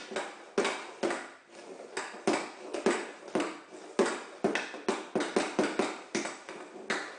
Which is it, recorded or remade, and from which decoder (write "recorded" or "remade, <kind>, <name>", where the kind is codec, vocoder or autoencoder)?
recorded